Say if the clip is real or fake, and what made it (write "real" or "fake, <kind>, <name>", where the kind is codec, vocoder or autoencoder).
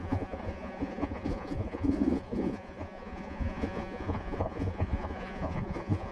fake, vocoder, Vocos